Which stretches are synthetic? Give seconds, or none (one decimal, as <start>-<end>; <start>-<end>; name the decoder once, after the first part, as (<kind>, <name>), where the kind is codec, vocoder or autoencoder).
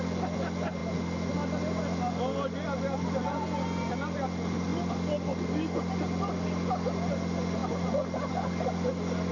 none